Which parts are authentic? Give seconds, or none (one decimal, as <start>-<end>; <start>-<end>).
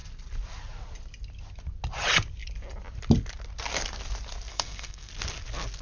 0.0-4.5; 5.1-5.8